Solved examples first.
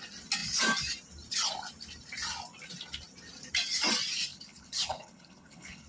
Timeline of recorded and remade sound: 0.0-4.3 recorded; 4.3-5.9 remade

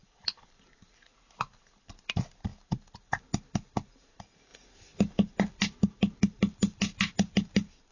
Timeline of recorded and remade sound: 0.0-7.9 recorded

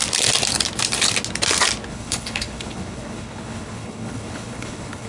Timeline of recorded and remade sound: 0.0-1.9 recorded; 1.9-5.1 remade

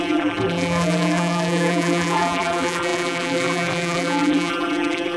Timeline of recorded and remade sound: 0.0-5.2 remade

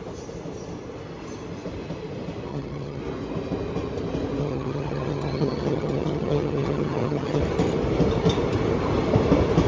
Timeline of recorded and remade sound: 0.0-2.5 recorded; 2.5-3.0 remade; 3.0-4.4 recorded; 4.4-7.4 remade; 7.4-9.7 recorded